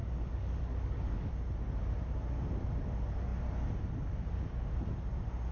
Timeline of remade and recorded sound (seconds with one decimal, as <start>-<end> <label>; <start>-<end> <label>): 0.0-1.3 remade; 1.3-5.5 recorded